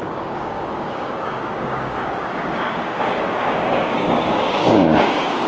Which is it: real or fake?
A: fake